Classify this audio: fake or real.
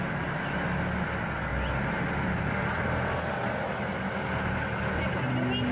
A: real